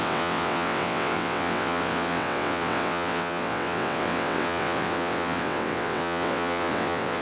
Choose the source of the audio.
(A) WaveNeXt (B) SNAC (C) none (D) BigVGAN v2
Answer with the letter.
A